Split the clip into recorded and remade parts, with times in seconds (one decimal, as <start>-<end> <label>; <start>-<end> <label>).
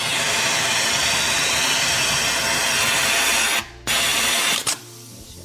0.0-5.4 recorded